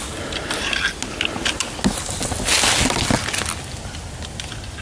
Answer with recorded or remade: recorded